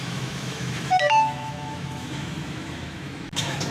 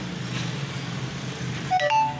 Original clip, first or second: second